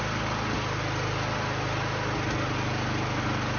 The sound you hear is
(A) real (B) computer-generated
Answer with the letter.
A